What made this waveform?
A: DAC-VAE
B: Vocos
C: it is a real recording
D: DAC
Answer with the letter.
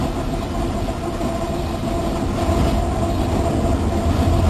C